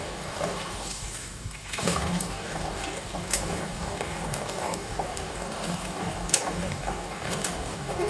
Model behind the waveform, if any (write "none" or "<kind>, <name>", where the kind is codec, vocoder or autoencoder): codec, DAC